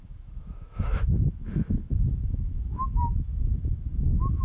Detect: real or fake fake